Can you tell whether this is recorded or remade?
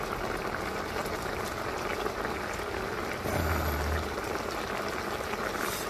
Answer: recorded